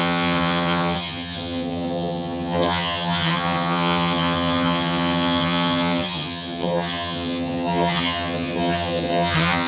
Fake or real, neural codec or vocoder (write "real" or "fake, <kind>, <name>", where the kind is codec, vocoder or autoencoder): fake, vocoder, HiFi-GAN